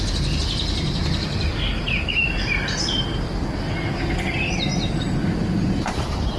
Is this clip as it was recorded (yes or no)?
yes